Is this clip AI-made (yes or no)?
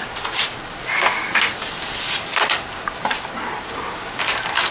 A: no